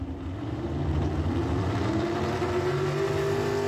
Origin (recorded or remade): recorded